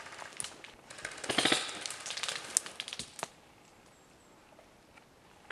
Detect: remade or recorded recorded